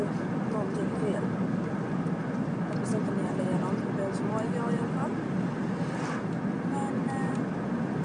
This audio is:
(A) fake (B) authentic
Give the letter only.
B